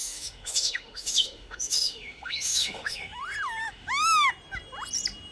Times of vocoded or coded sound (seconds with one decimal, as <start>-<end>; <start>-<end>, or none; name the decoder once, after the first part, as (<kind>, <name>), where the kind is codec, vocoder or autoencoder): 0.0-3.2 (autoencoder, DAC-VAE); 3.6-4.3